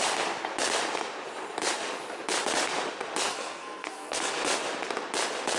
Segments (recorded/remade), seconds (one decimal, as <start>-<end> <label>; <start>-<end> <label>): 0.0-3.3 recorded; 3.3-4.3 remade; 4.3-5.6 recorded